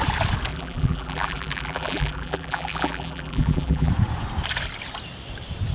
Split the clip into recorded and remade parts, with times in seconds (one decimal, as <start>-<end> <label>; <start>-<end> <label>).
0.0-0.5 recorded; 0.5-3.9 remade; 3.9-5.7 recorded